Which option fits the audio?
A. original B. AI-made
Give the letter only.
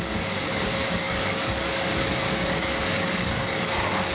B